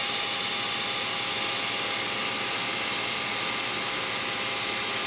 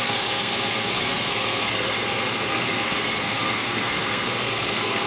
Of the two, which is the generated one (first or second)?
second